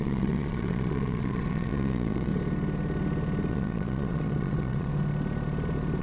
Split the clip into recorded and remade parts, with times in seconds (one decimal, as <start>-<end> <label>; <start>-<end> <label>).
0.0-2.3 remade; 2.3-3.5 recorded; 3.5-4.9 remade; 4.9-6.0 recorded